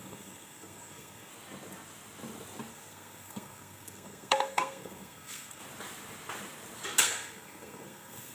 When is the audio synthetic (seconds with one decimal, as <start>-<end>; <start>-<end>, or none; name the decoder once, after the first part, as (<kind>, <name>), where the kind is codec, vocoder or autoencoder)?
0.0-1.3 (codec, SNAC); 2.7-5.6; 7.0-8.3